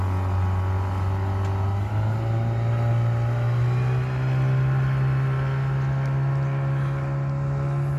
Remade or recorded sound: recorded